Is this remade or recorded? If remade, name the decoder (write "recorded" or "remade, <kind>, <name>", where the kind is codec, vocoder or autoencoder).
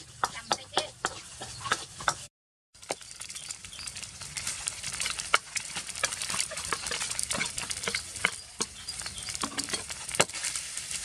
remade, vocoder, BigVGAN v2